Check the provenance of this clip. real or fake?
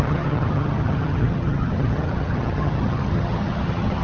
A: fake